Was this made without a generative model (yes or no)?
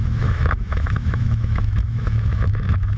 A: no